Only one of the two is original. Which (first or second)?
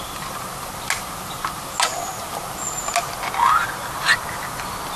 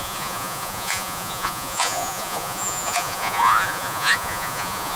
first